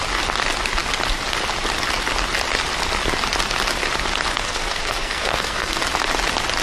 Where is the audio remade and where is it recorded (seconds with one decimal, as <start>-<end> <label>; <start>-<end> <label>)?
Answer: 0.0-4.3 recorded; 4.3-5.8 remade; 5.8-6.6 recorded